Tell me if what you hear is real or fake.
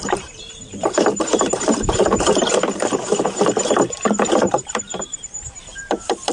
fake